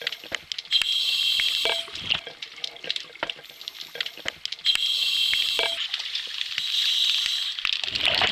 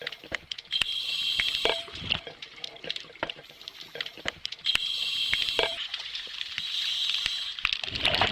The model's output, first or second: second